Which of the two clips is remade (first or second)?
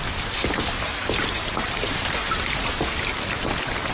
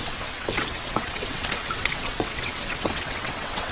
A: second